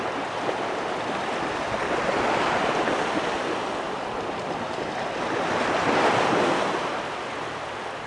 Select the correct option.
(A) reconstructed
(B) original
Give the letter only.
B